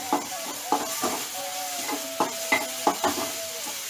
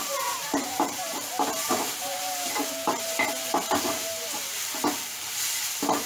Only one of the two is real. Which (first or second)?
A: first